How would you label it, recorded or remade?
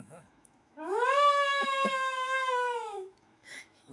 remade